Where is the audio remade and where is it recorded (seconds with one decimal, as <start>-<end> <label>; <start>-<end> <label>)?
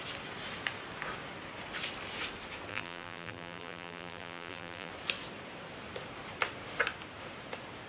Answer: 0.0-2.7 recorded; 2.7-4.9 remade; 4.9-7.9 recorded